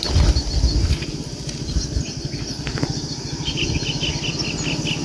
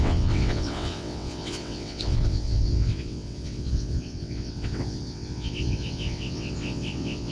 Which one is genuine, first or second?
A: first